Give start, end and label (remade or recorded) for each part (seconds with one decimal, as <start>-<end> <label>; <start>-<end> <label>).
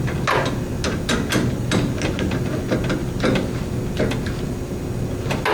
0.0-5.5 recorded